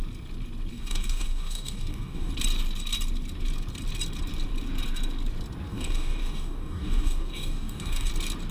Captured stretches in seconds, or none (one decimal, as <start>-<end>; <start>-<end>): 0.0-0.7; 2.3-5.7; 8.1-8.5